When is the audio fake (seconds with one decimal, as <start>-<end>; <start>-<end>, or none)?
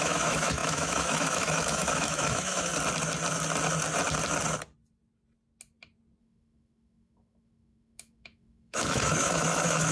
0.0-2.7; 6.2-9.9